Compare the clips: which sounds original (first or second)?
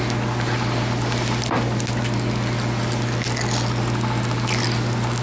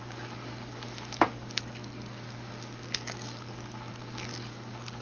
first